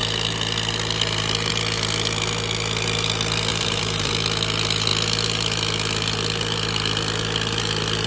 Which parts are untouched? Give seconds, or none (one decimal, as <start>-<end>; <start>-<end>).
0.0-3.5; 4.1-8.1

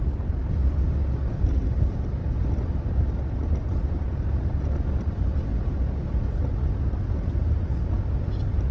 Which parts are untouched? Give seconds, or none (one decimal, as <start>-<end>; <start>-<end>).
2.2-3.2; 5.5-7.8

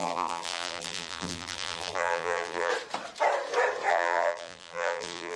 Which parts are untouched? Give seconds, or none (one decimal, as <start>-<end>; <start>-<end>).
2.7-3.9

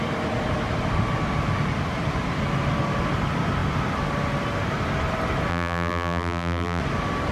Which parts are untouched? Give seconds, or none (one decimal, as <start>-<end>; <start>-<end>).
0.0-5.5; 6.8-7.3

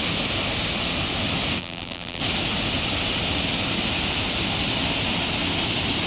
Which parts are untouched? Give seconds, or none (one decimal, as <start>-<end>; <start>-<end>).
0.0-1.6; 2.2-6.1